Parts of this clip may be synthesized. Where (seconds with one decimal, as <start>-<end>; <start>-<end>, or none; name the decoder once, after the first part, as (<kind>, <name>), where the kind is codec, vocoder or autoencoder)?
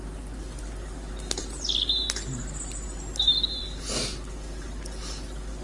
none